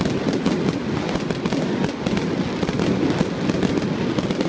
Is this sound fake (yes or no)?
no